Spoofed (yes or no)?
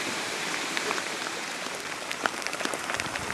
yes